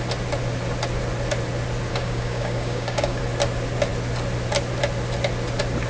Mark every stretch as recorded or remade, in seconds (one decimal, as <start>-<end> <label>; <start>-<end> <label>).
0.0-1.9 recorded; 1.9-3.2 remade; 3.2-5.9 recorded

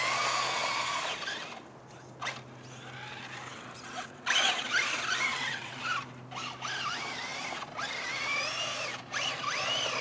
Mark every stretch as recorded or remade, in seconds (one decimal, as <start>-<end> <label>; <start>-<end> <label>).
0.0-5.3 recorded; 5.3-5.8 remade; 5.8-10.0 recorded